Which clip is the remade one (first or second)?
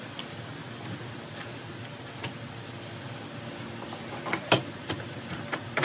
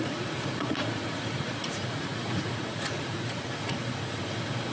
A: second